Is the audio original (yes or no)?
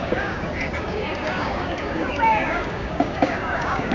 no